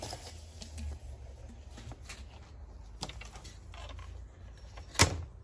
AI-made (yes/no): no